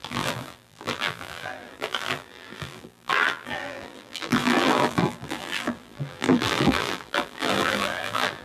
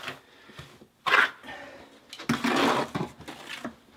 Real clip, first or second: second